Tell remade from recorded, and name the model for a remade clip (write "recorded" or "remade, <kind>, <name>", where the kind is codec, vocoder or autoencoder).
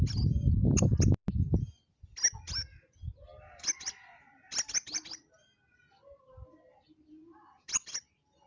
recorded